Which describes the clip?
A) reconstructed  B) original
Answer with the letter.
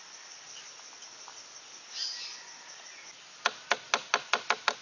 B